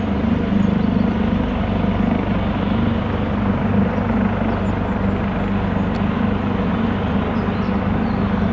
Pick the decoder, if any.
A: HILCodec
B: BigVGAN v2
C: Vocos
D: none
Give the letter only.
D